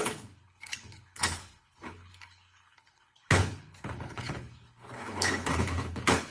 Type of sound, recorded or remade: remade